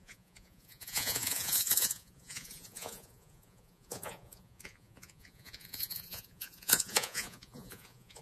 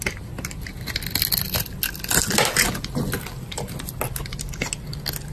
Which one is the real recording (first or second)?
second